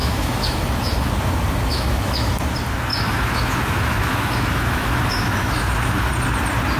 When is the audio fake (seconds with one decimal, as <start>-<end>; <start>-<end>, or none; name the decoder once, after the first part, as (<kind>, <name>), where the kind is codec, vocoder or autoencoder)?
0.0-1.1 (autoencoder, DAC-VAE); 1.7-2.3; 2.9-6.1